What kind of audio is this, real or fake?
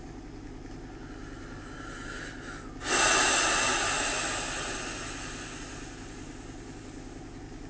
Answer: real